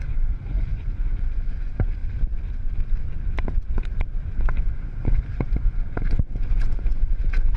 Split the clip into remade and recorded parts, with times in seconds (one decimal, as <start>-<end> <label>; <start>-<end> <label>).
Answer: 0.0-2.0 remade; 2.0-4.4 recorded; 4.4-7.6 remade